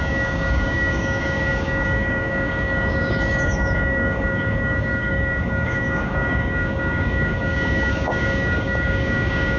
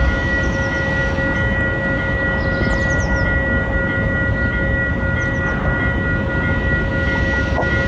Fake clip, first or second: first